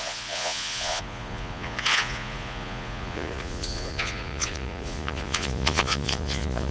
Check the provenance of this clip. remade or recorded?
remade